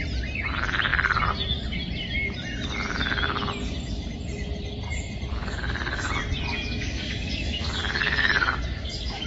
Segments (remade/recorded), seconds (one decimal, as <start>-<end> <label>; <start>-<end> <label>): 0.0-5.3 recorded; 5.3-6.1 remade; 6.1-6.5 recorded; 6.5-9.3 remade